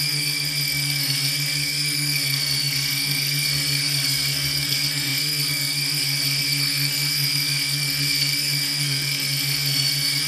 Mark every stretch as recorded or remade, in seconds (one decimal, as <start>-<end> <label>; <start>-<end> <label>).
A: 0.0-10.3 remade